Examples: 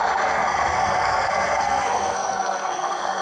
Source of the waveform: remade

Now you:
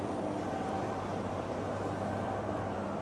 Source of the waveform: remade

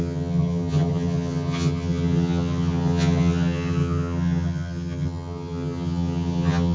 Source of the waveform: remade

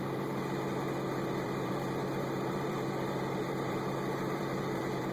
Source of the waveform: remade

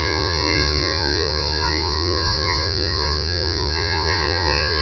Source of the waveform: remade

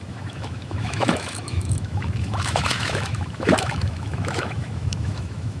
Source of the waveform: remade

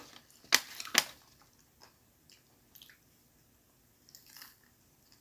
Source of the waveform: recorded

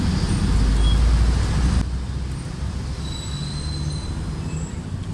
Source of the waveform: recorded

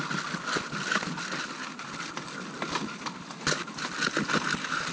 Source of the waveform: recorded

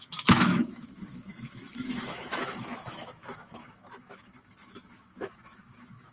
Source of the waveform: remade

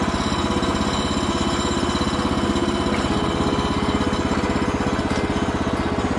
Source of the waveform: recorded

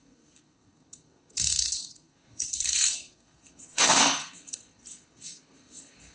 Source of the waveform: remade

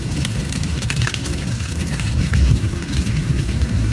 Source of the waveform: remade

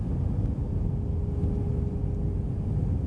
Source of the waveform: recorded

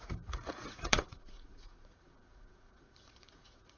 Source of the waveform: remade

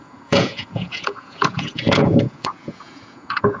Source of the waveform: remade